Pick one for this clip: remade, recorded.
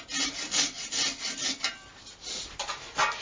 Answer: recorded